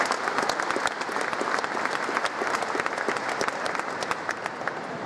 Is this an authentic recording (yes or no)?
yes